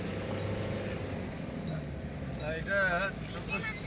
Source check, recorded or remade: recorded